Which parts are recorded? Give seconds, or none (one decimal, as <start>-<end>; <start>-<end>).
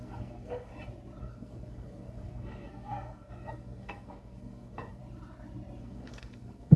0.7-1.2; 5.0-5.8